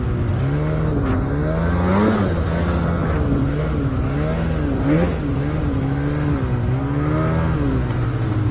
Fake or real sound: real